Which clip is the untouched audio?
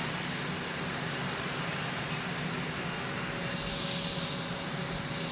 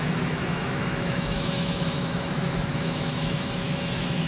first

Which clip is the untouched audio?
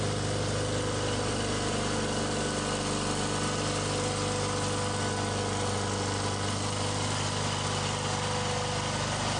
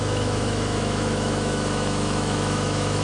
first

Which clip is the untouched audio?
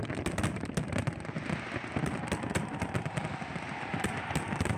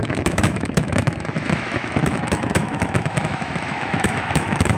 first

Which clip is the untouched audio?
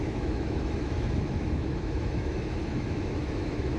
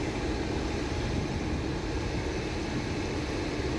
second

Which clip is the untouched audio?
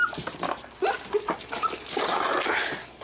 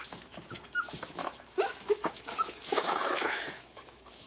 first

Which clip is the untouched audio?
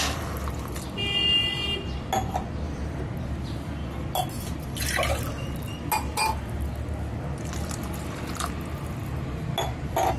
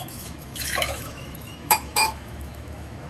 first